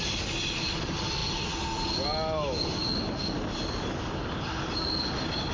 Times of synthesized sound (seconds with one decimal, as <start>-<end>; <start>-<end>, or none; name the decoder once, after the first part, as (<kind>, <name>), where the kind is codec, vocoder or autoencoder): none

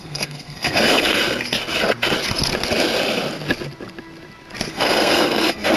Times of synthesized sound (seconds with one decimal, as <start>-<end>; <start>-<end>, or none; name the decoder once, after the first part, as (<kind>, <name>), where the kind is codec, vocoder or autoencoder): 0.0-1.2 (codec, SNAC); 4.7-5.8

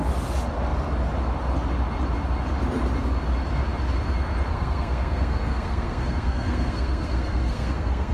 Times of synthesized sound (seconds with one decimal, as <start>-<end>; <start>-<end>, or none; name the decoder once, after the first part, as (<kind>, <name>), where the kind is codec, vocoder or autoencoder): 4.5-8.1 (codec, SNAC)